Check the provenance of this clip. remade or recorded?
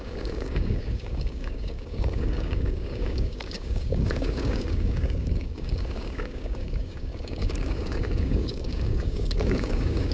remade